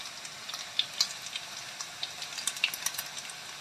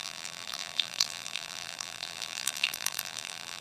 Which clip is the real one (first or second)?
first